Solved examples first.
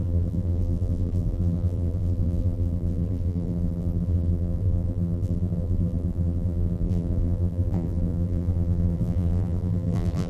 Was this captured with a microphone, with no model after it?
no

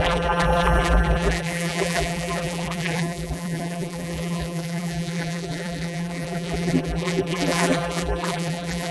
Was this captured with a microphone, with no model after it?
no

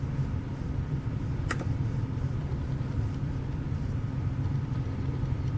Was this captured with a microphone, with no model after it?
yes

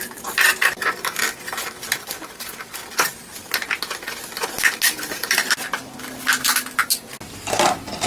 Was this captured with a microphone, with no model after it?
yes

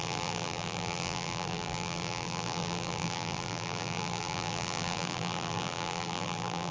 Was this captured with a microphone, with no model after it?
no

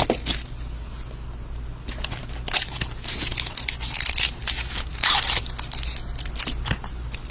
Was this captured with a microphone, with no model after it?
yes